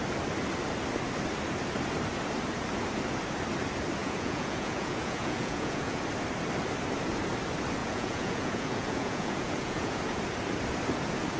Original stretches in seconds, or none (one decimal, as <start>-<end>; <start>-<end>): 0.0-4.0; 6.0-7.8; 10.2-11.4